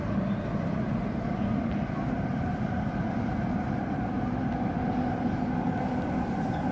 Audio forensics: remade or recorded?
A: recorded